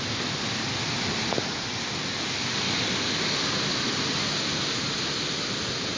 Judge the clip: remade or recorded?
recorded